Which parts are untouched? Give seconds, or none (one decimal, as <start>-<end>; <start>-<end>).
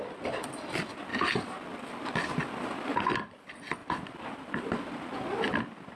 0.0-6.0